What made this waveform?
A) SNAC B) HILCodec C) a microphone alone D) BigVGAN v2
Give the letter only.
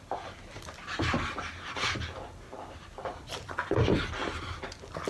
C